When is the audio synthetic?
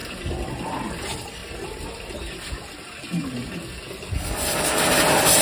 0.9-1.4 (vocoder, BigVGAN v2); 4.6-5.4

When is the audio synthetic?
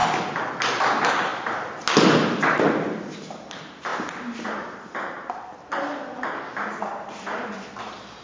none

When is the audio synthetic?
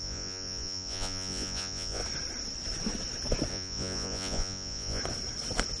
0.0-2.0 (vocoder, Vocos); 3.5-5.0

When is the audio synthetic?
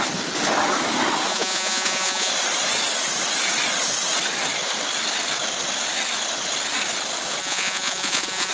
1.3-2.3 (vocoder, Vocos); 7.4-8.5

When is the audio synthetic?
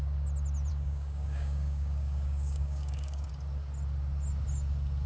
0.7-3.3 (codec, DAC)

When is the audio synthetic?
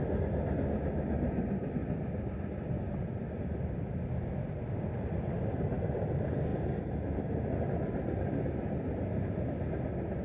none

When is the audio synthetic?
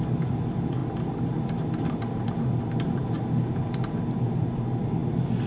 none